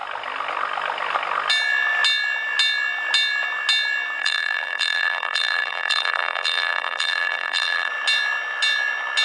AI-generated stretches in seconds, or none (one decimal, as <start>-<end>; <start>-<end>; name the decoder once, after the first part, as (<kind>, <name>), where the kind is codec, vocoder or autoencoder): 4.2-7.9 (vocoder, BigVGAN v2)